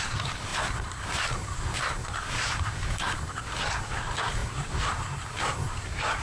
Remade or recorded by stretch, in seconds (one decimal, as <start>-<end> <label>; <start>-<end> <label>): 0.0-6.2 remade